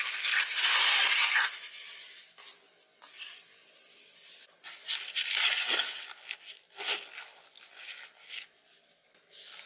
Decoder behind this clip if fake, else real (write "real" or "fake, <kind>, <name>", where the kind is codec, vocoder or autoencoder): real